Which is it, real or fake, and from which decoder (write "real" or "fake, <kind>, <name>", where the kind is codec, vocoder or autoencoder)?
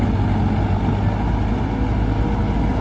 real